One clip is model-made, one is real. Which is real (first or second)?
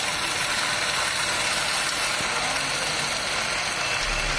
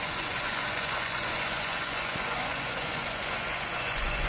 first